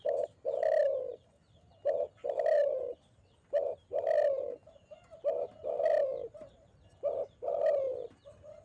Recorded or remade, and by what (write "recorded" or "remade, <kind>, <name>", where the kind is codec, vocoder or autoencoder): recorded